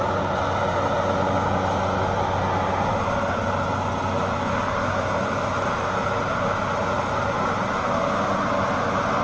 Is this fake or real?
real